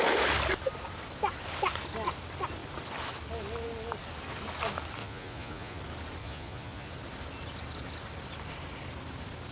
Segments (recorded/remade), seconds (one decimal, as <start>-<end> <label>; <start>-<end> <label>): 0.0-5.0 recorded; 5.0-5.8 remade; 5.8-6.2 recorded; 6.2-6.9 remade; 6.9-9.5 recorded